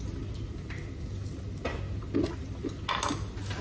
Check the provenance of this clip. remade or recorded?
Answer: recorded